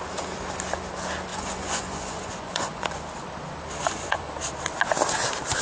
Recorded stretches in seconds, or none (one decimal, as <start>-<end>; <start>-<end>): 0.0-1.3; 3.0-3.8; 4.3-5.6